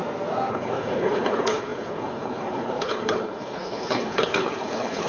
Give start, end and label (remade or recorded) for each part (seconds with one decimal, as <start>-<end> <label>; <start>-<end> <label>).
0.0-0.5 recorded; 0.5-5.1 remade